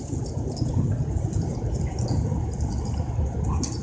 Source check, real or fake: real